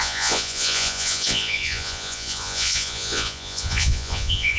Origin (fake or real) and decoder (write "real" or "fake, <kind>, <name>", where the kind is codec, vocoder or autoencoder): fake, vocoder, Vocos